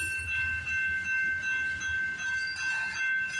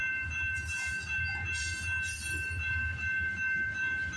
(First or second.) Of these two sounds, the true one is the first